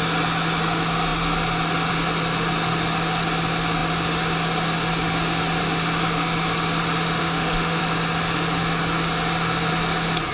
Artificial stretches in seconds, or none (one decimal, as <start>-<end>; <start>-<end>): 7.2-7.8